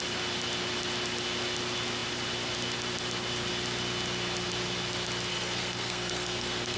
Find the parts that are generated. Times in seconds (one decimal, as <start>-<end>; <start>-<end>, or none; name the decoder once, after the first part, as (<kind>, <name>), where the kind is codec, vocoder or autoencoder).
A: 5.3-6.8 (codec, SNAC)